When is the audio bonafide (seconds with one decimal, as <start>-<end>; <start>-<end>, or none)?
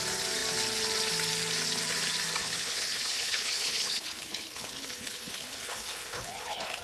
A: 0.0-2.4